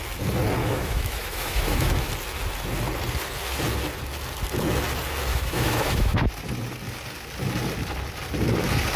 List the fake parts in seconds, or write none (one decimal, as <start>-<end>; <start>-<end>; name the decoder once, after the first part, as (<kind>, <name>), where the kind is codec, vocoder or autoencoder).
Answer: 0.6-2.1 (autoencoder, DAC-VAE); 5.3-6.3